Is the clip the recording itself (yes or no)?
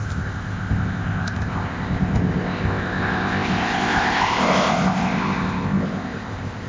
no